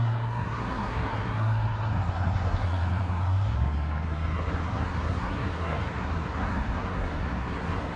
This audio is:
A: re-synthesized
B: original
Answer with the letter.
A